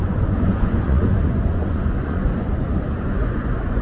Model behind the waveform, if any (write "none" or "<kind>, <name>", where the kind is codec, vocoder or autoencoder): vocoder, Vocos